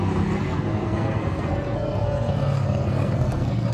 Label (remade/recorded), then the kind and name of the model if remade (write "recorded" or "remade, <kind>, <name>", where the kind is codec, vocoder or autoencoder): remade, codec, SNAC